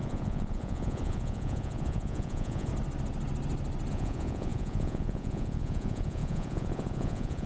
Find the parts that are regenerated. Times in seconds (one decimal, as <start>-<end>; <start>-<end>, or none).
0.0-2.7; 3.9-7.5